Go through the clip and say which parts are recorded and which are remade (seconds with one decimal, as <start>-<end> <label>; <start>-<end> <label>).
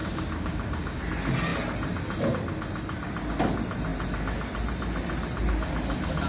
0.0-1.0 remade; 1.0-6.3 recorded